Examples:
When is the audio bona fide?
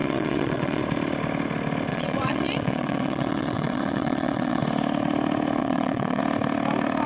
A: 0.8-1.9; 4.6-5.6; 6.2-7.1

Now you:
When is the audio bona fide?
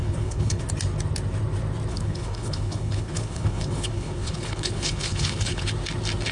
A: 0.6-1.9; 5.7-6.3